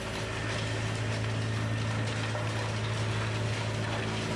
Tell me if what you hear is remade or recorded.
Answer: recorded